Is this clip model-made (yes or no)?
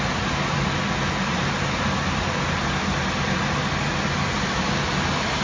no